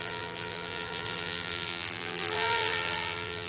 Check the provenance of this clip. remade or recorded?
remade